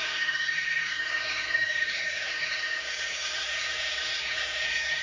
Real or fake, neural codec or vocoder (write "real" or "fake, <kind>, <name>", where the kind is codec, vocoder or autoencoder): fake, codec, SNAC